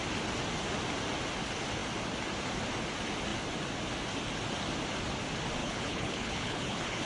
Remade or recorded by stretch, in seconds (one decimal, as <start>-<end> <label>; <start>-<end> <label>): 0.0-5.6 recorded; 5.6-7.1 remade